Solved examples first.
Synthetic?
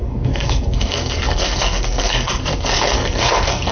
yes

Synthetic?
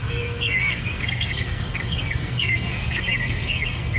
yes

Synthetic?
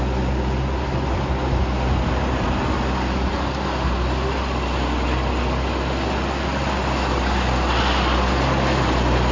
no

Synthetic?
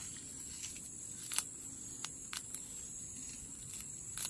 no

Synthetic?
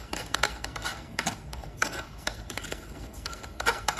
yes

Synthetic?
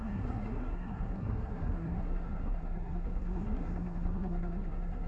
yes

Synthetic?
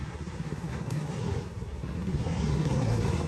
yes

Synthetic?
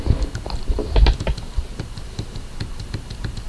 no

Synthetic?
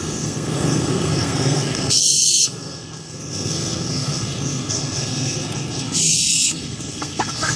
yes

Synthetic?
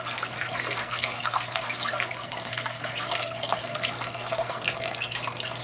yes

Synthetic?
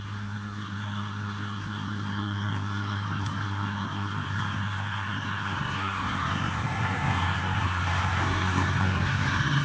yes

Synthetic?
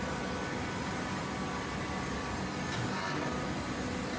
no